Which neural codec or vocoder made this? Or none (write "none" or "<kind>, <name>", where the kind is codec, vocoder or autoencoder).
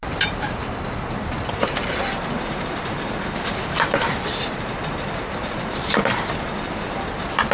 vocoder, BigVGAN v2